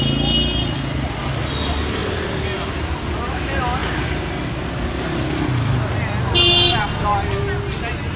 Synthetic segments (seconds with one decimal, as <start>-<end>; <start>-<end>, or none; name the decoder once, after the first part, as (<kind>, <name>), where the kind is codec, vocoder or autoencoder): 2.0-3.1 (vocoder, BigVGAN v2)